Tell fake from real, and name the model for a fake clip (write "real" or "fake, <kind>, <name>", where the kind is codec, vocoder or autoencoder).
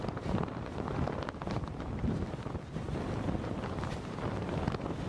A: real